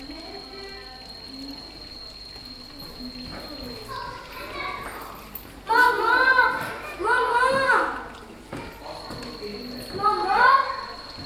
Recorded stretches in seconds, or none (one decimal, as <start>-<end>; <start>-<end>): 0.0-5.8; 7.0-11.3